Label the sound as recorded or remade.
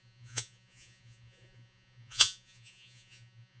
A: remade